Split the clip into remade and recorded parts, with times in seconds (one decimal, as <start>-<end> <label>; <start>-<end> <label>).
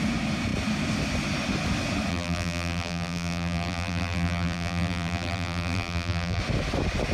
0.0-2.1 recorded; 2.1-6.4 remade; 6.4-7.1 recorded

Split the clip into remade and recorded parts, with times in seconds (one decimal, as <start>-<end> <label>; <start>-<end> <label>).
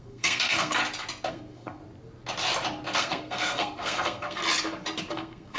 0.0-0.8 remade; 0.8-1.3 recorded; 1.3-1.8 remade; 1.8-3.0 recorded; 3.0-4.4 remade; 4.4-5.1 recorded; 5.1-5.6 remade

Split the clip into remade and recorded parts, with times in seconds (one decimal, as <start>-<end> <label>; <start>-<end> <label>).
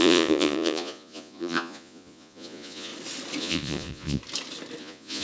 0.0-2.9 remade; 2.9-3.4 recorded; 3.4-4.2 remade; 4.2-4.8 recorded; 4.8-5.2 remade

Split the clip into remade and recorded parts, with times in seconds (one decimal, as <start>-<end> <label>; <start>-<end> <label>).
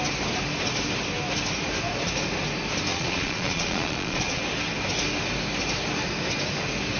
0.0-2.9 recorded; 2.9-4.4 remade; 4.4-7.0 recorded